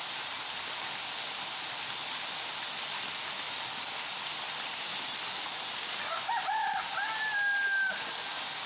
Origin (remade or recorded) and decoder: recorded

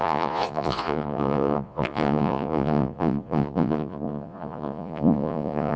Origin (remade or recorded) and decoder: remade, vocoder, Vocos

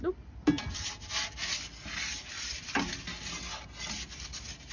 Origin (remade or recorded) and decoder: recorded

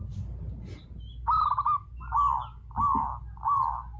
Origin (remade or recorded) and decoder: recorded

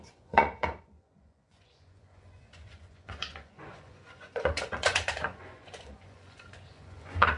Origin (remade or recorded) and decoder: remade, vocoder, Vocos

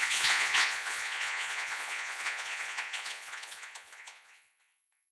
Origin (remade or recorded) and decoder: remade, vocoder, Vocos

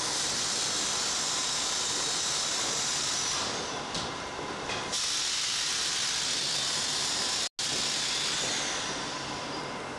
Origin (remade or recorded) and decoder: recorded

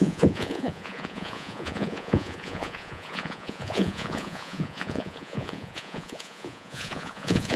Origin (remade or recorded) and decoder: remade, vocoder, Vocos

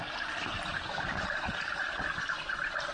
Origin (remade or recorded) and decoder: recorded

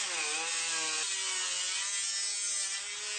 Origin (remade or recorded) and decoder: recorded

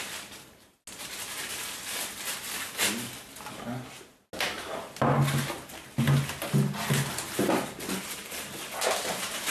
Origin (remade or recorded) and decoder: recorded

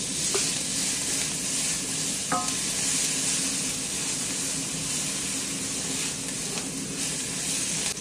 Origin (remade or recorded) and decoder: recorded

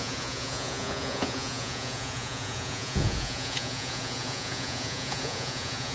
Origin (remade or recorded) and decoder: remade, vocoder, Vocos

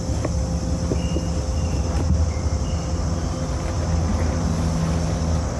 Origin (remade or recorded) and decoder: recorded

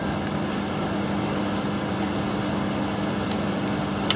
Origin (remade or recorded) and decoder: recorded